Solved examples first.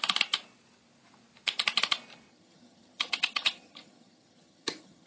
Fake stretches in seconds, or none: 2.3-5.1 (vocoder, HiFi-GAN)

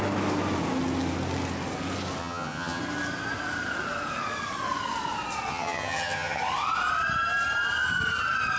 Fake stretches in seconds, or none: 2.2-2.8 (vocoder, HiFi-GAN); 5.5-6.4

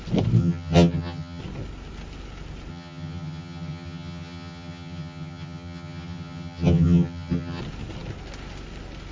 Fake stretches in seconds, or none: 0.4-1.4 (vocoder, HiFi-GAN); 2.7-7.6